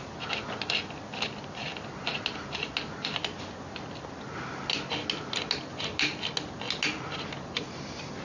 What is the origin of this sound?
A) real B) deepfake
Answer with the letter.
A